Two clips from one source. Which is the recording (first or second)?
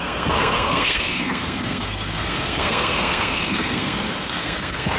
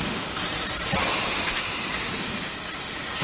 second